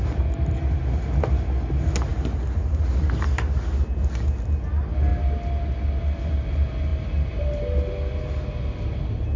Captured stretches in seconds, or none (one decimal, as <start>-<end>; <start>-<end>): 0.0-9.4